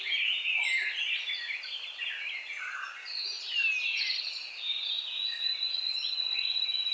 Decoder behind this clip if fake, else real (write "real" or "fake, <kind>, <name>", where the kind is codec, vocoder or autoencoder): real